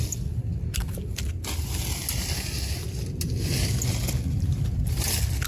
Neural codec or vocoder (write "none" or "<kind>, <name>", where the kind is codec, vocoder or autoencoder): none